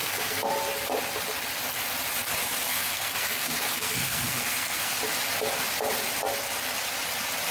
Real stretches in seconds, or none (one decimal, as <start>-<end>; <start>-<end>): 0.5-2.7; 5.0-7.5